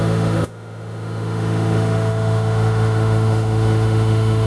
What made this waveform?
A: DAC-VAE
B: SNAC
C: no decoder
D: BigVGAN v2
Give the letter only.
A